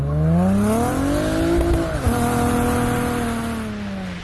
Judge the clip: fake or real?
real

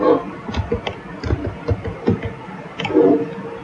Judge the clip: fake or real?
real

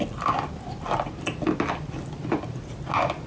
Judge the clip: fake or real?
real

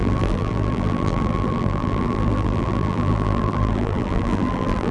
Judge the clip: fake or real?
fake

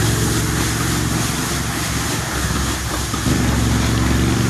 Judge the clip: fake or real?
real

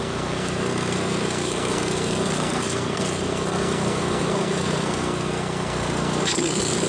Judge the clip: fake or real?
fake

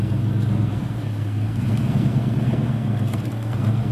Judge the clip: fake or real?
fake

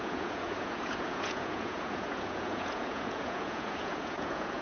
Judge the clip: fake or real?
fake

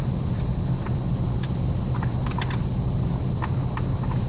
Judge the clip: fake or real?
real